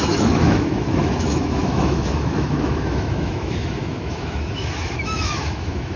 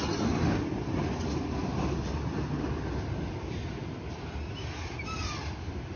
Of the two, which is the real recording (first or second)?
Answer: second